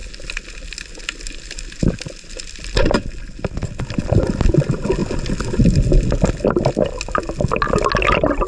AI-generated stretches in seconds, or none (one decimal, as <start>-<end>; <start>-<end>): none